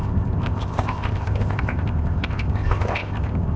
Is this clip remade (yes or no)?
yes